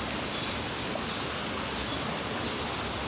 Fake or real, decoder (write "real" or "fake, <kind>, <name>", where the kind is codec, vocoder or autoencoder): real